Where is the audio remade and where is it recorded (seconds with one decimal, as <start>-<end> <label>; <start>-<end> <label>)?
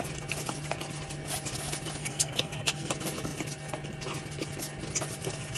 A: 0.0-2.0 recorded; 2.0-2.9 remade; 2.9-5.6 recorded